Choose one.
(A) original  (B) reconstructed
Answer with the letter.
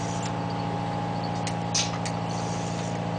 A